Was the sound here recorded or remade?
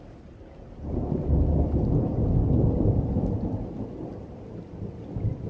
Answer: recorded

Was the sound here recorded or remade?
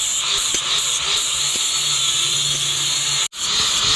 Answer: recorded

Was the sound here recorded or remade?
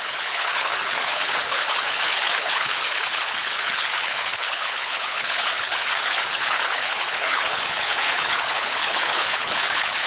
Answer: remade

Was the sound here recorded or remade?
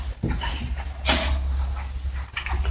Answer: recorded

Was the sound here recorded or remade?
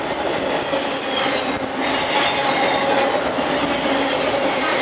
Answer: recorded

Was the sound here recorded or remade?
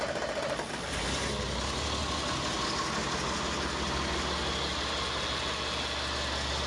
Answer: recorded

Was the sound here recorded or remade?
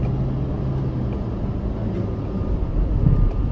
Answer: recorded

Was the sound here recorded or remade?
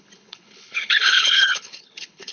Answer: remade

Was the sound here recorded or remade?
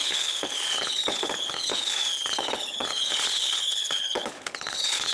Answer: remade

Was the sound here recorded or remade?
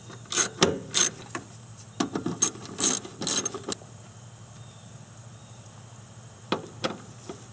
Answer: recorded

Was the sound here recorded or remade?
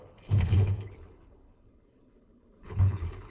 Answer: remade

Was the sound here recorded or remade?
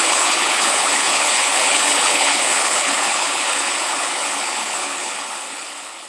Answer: remade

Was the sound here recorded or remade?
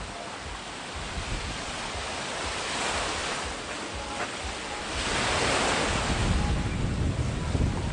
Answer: recorded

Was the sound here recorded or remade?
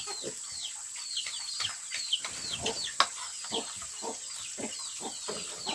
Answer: recorded